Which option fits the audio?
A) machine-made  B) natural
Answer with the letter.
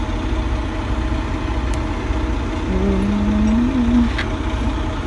B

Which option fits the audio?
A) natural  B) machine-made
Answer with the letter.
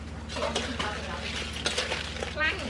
A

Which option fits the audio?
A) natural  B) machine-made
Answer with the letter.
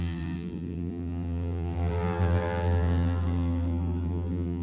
B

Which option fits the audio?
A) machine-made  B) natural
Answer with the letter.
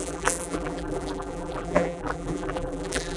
A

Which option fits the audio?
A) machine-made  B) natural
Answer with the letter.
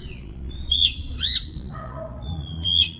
A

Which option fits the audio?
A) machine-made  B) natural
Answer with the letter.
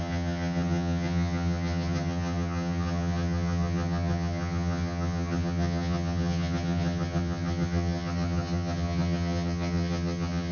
A